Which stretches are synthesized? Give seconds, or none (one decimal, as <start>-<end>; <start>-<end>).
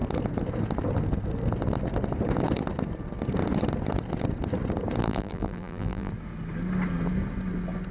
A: 5.0-6.1